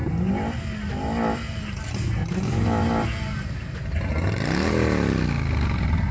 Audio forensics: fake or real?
real